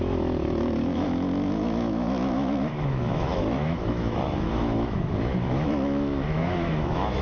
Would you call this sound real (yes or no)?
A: no